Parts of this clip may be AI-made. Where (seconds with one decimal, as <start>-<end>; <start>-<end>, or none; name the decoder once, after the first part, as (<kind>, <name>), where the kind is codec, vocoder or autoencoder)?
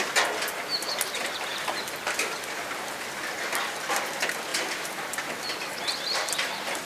1.5-3.3 (vocoder, BigVGAN v2); 4.5-5.3